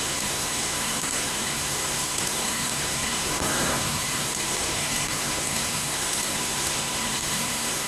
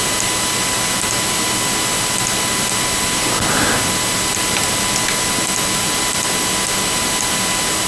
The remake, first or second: first